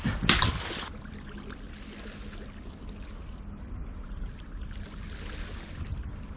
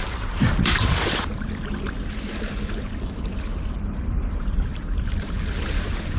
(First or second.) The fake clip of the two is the second